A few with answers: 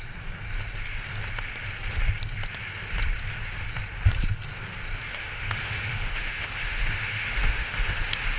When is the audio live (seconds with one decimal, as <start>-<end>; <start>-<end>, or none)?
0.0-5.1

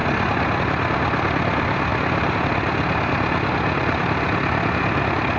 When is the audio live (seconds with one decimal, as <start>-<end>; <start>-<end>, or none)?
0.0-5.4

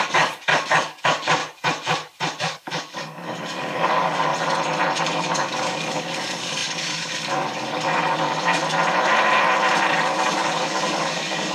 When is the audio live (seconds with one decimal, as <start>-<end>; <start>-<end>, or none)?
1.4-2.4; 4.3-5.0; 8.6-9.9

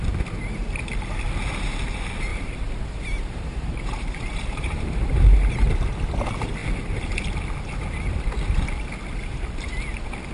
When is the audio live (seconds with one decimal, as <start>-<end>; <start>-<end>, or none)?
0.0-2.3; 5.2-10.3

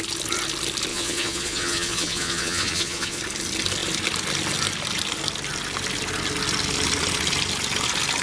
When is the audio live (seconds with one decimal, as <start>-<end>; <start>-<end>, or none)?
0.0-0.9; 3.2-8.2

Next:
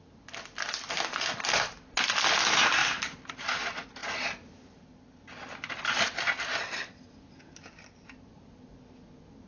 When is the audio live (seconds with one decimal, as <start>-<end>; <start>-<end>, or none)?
0.0-2.8; 3.3-9.5